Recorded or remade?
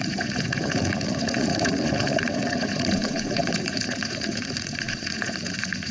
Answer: remade